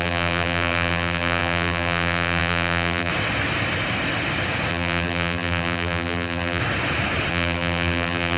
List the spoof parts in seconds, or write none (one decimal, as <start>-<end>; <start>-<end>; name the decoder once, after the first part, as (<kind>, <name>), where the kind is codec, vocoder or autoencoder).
0.0-3.1 (vocoder, BigVGAN v2); 4.7-6.6; 7.3-8.4